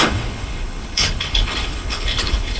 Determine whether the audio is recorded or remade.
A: remade